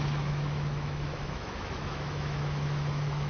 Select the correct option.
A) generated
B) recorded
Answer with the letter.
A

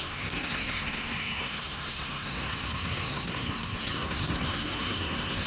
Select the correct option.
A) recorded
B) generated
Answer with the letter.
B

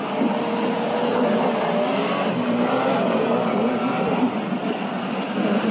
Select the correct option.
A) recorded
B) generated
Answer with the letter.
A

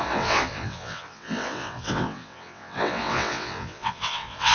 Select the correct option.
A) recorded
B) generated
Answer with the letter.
B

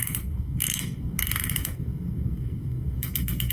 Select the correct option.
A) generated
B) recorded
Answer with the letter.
A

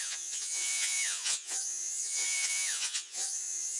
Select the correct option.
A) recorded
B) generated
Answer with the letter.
B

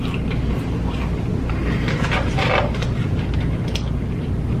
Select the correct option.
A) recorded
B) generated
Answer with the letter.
A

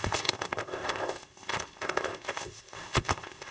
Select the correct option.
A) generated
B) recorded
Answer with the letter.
A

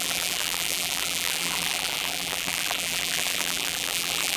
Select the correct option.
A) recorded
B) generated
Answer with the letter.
B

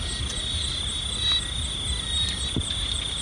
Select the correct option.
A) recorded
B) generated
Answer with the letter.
A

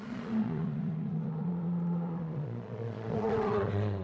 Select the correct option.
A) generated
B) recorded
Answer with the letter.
A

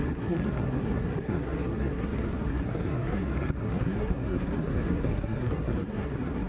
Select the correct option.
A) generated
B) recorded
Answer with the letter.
A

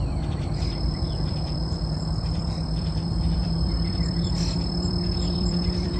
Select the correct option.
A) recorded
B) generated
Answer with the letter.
B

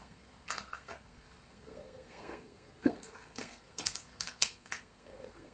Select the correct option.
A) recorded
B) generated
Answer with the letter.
B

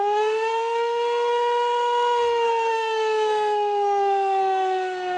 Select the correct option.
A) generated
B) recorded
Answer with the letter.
A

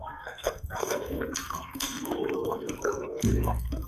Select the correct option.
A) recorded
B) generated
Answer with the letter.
B